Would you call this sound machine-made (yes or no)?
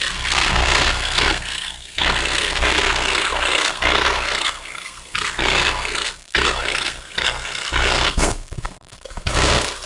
yes